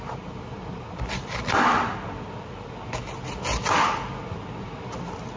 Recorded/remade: recorded